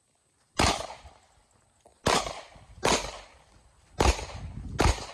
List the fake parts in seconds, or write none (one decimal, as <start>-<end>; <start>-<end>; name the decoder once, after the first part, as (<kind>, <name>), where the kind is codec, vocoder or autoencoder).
none